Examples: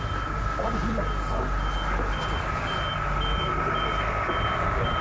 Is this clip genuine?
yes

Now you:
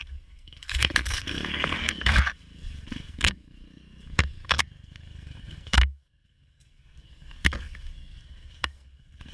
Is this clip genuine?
no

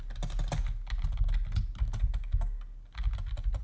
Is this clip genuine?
yes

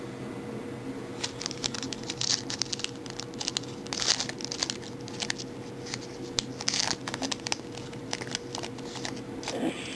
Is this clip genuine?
yes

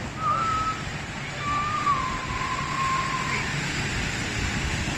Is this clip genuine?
yes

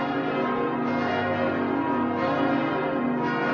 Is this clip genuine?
yes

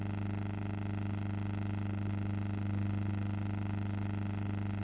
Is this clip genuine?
yes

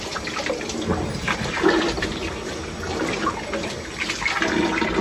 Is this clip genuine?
yes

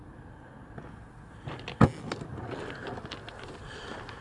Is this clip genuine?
yes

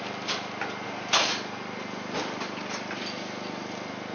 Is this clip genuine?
yes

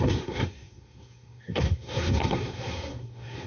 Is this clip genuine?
no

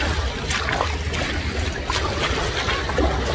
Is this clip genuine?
yes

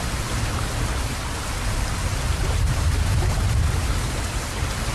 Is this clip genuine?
yes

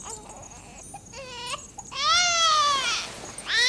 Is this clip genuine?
yes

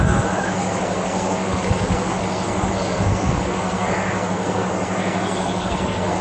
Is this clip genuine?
no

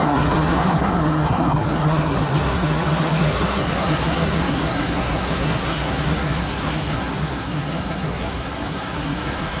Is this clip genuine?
no